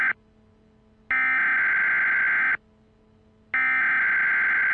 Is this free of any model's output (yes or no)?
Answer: yes